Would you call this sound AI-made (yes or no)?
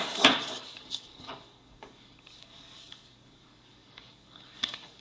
yes